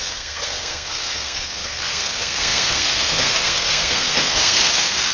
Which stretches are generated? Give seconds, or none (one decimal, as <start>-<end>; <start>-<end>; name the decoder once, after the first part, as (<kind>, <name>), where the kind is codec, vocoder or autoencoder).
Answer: 0.0-5.1 (codec, SNAC)